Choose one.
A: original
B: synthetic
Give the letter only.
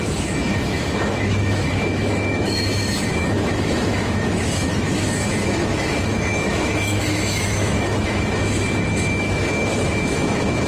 B